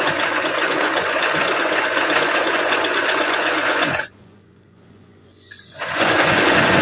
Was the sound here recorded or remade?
remade